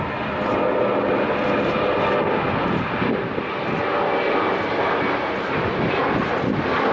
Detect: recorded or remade recorded